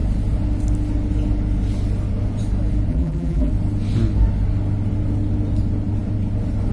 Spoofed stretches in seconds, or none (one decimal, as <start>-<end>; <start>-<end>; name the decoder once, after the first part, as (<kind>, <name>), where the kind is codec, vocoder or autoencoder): 2.9-3.5 (vocoder, BigVGAN v2)